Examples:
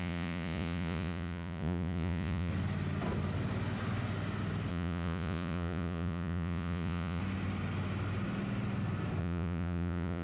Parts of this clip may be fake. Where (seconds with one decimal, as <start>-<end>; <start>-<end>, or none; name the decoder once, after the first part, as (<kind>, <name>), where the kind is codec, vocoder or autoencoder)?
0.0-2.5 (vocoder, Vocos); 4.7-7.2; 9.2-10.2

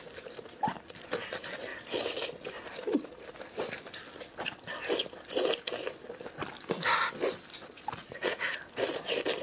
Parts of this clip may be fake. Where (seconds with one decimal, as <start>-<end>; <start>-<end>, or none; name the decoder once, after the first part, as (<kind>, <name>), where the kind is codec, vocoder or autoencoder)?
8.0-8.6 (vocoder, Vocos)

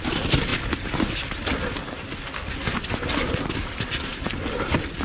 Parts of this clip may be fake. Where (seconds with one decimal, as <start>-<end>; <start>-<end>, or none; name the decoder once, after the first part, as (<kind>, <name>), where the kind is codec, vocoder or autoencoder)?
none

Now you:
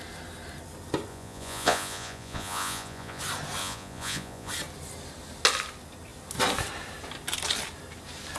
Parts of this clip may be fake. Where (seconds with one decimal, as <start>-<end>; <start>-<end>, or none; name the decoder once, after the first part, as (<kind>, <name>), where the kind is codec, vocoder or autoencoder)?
1.1-3.2 (vocoder, Vocos); 3.6-4.5

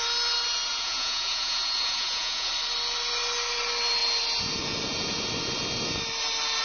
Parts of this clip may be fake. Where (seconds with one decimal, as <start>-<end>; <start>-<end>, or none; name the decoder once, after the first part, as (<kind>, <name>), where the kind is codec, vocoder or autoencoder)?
0.7-2.5 (vocoder, Vocos)

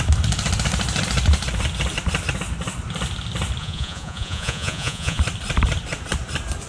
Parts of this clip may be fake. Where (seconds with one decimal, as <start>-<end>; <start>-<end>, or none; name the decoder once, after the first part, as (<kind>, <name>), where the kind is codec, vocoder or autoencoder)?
3.6-5.2 (vocoder, Vocos)